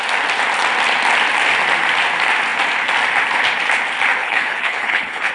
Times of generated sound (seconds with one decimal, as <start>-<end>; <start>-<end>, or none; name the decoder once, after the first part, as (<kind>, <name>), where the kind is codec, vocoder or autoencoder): 4.2-5.3 (codec, HILCodec)